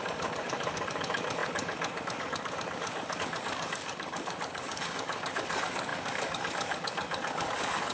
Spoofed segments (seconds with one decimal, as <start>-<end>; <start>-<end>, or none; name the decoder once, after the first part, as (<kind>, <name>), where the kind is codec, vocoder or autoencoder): 0.0-7.9 (codec, DAC)